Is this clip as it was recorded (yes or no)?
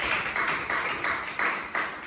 yes